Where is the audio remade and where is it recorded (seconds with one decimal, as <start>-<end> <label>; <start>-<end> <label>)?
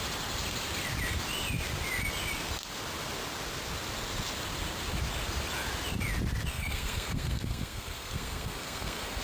0.0-6.5 recorded; 6.5-9.2 remade